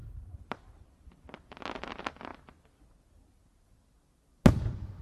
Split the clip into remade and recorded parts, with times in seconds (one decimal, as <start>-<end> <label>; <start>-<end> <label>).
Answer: 0.0-1.3 remade; 1.3-5.0 recorded